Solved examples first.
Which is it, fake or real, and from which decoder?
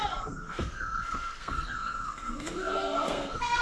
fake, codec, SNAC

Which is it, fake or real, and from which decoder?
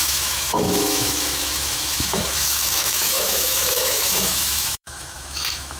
fake, autoencoder, DAC-VAE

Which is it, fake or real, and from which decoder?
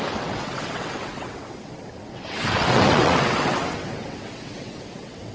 fake, vocoder, WaveNeXt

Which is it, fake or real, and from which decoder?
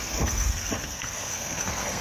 fake, codec, SNAC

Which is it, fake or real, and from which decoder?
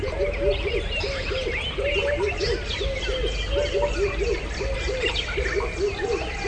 real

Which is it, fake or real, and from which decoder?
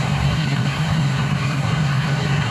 fake, codec, SNAC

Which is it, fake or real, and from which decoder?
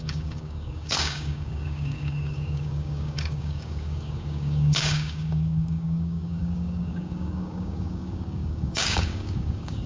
fake, codec, DAC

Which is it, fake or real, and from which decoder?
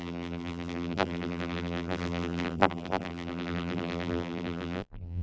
fake, vocoder, BigVGAN v2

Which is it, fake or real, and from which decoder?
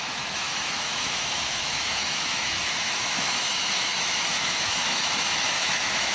fake, autoencoder, DAC-VAE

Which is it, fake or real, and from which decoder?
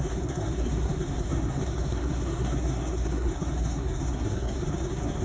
fake, codec, SNAC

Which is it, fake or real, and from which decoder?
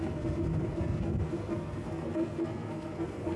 fake, codec, SNAC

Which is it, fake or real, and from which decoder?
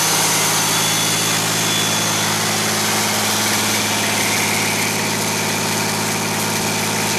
real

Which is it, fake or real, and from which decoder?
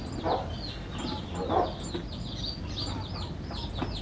real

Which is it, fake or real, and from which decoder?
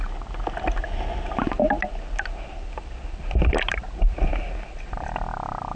real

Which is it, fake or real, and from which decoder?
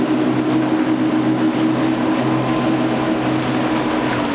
real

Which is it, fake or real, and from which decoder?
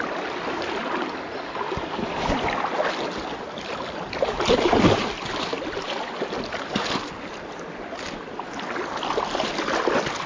real